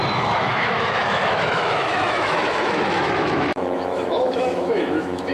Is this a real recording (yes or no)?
no